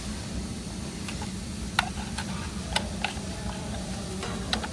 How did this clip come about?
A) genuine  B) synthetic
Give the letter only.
B